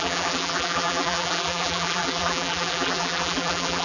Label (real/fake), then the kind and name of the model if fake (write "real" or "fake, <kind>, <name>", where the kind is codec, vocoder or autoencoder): fake, vocoder, BigVGAN v2